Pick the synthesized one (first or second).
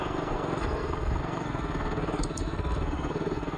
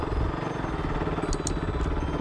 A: first